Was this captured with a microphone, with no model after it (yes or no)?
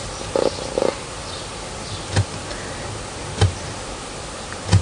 yes